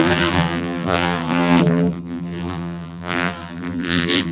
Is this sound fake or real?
fake